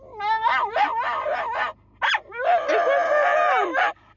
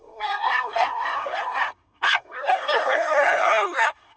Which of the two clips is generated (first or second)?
second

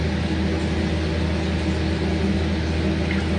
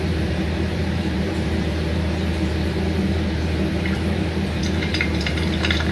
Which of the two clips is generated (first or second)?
second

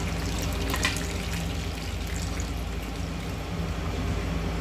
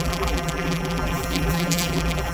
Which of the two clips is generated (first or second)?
second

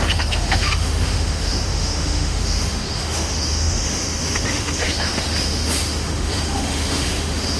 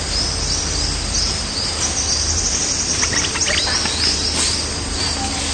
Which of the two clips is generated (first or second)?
first